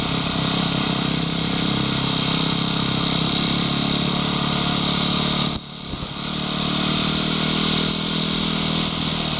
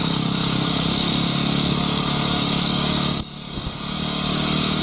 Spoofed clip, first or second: second